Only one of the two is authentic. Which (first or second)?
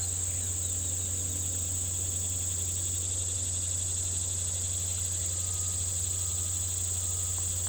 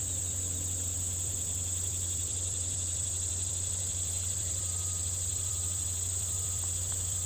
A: first